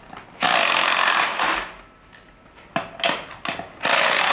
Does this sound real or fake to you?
real